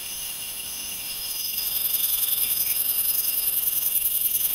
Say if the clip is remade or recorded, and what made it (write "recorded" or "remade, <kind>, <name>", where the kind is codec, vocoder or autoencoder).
remade, autoencoder, DAC-VAE